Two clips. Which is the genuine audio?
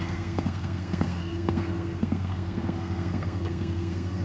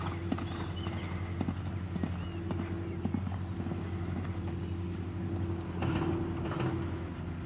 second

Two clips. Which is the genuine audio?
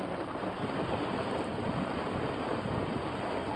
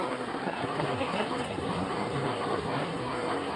first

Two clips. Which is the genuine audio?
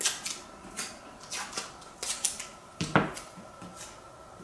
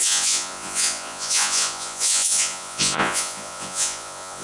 first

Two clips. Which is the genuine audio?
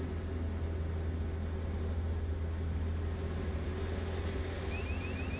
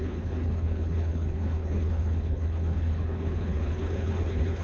first